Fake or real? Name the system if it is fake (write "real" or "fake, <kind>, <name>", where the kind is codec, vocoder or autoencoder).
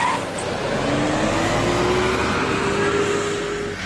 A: real